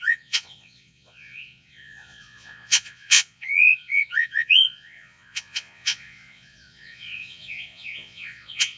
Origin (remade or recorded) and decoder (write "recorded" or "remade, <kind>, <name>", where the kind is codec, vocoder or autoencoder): remade, vocoder, Vocos